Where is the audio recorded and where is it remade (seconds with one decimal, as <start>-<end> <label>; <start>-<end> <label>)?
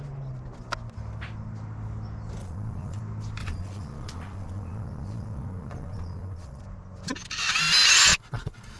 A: 0.0-2.4 recorded; 2.4-3.0 remade; 3.0-3.4 recorded; 3.4-6.6 remade; 6.6-8.1 recorded; 8.1-8.8 remade